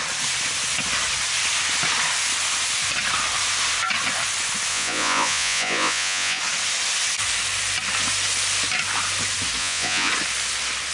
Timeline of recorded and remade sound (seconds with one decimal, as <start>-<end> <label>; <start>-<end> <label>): 0.0-4.7 recorded; 4.7-6.4 remade; 6.4-9.6 recorded; 9.6-10.1 remade; 10.1-10.9 recorded

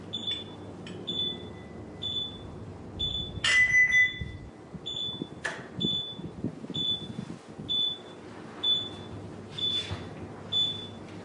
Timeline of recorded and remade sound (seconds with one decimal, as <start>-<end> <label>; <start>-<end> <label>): 0.0-11.2 recorded

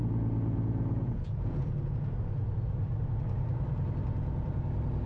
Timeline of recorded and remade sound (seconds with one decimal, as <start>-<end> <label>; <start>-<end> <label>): 0.0-2.1 remade; 2.1-5.1 recorded

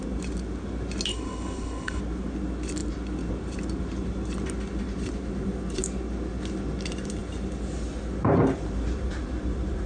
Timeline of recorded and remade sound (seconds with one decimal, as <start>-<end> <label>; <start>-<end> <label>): 0.0-1.1 recorded; 1.1-2.0 remade; 2.0-9.9 recorded

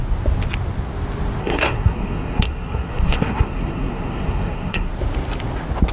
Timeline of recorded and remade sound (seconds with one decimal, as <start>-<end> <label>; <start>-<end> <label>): 0.0-1.4 recorded; 1.4-4.9 remade; 4.9-5.9 recorded